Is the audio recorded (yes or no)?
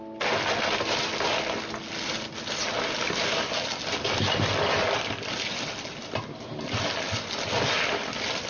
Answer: yes